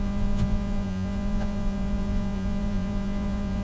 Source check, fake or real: fake